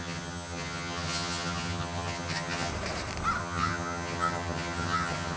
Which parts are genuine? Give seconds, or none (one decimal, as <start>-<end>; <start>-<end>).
2.7-3.4